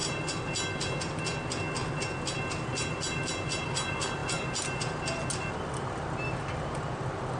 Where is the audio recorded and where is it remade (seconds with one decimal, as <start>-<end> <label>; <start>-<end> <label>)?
0.0-7.4 recorded

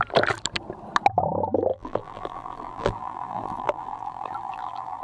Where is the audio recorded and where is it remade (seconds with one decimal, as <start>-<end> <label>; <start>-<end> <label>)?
0.0-1.7 recorded; 1.7-5.0 remade

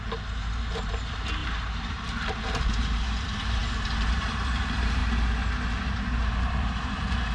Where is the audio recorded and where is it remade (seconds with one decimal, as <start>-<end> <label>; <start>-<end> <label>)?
0.0-5.0 remade; 5.0-5.9 recorded; 5.9-7.3 remade

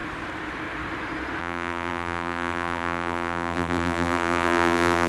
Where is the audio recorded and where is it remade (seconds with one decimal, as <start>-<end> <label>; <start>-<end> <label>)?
0.0-1.4 recorded; 1.4-5.1 remade

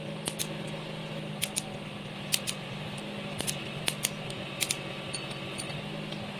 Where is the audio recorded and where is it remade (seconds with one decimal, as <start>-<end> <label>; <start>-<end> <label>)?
0.0-6.4 recorded